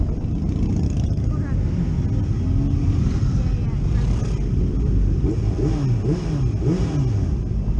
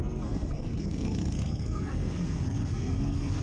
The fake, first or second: second